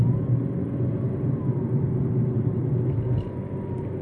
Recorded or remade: recorded